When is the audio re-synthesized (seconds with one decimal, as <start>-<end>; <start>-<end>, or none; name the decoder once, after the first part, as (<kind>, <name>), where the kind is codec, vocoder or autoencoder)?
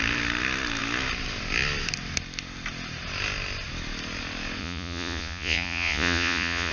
4.6-6.7 (vocoder, Vocos)